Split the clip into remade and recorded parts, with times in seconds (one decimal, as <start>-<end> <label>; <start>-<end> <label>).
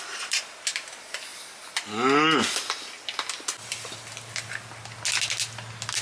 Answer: 0.0-6.0 recorded